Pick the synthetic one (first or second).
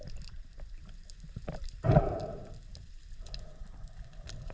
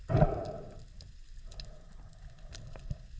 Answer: first